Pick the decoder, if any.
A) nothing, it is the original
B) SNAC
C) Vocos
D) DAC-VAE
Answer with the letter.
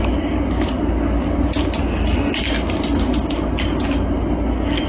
A